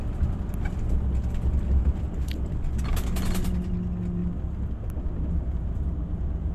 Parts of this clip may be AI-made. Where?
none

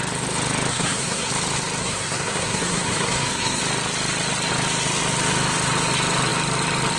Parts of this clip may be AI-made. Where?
0.7-1.3 (codec, SNAC); 1.8-3.6